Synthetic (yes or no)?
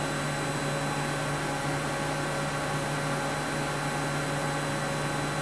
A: no